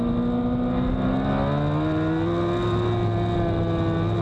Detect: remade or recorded recorded